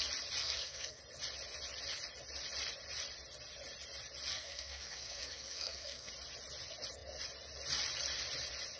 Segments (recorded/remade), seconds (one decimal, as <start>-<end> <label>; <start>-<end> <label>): 0.0-0.4 recorded; 0.4-1.0 remade; 1.0-4.3 recorded; 4.3-6.1 remade; 6.1-8.8 recorded